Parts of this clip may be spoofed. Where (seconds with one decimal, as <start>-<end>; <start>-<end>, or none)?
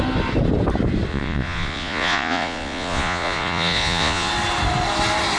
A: 1.1-4.3